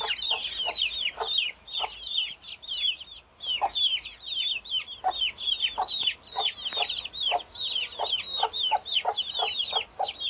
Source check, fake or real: real